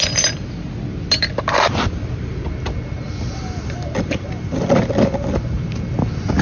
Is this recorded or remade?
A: recorded